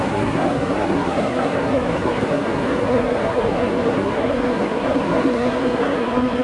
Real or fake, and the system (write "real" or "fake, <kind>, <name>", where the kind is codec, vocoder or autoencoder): fake, codec, SNAC